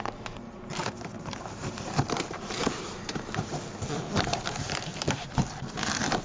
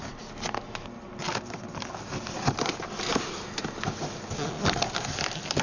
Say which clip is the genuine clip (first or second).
second